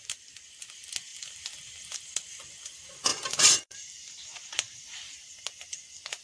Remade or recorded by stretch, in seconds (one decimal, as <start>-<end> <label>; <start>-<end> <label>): 0.0-1.1 recorded; 1.1-2.0 remade; 2.0-3.1 recorded; 3.1-5.4 remade; 5.4-6.2 recorded